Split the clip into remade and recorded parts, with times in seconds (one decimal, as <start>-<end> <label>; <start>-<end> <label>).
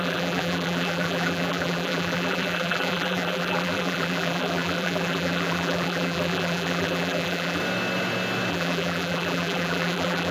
0.0-7.6 remade; 7.6-8.5 recorded; 8.5-10.3 remade